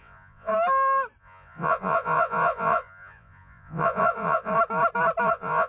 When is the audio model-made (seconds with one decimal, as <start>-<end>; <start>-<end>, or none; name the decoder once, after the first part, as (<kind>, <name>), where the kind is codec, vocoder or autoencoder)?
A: 0.0-0.5 (vocoder, Vocos); 1.2-4.5; 5.3-5.7